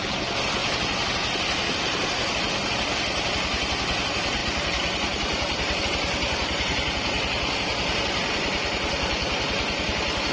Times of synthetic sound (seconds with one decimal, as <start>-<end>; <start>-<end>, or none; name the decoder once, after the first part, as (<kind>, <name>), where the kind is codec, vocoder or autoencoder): none